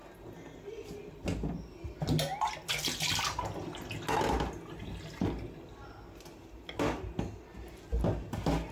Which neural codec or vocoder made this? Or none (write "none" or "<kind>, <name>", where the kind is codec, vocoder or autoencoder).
none